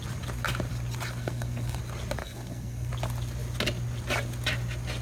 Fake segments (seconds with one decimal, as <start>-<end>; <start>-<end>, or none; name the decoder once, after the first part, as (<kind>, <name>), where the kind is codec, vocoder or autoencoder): 1.2-1.8 (codec, SNAC); 2.2-2.9